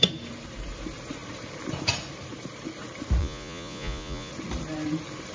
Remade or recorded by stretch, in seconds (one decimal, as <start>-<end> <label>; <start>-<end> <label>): 0.0-3.2 recorded; 3.2-4.3 remade; 4.3-5.3 recorded